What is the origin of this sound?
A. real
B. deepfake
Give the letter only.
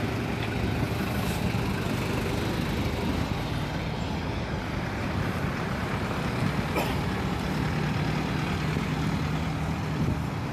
A